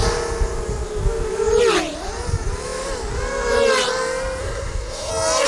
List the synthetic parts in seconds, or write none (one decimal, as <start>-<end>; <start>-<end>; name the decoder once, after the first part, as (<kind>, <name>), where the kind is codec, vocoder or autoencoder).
4.4-5.1 (codec, SNAC)